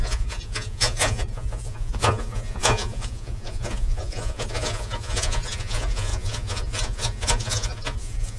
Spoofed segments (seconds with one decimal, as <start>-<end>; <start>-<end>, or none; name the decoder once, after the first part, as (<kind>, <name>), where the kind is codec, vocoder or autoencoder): 0.0-8.4 (vocoder, Vocos)